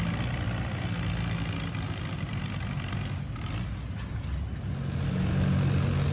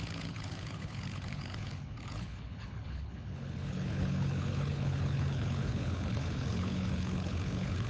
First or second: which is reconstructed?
second